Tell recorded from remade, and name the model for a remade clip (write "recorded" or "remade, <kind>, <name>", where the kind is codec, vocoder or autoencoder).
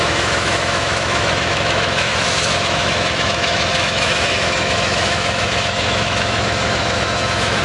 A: remade, autoencoder, DAC-VAE